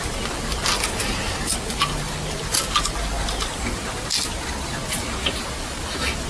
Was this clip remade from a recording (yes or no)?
no